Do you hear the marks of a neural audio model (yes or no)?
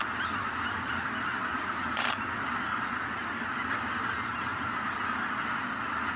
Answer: no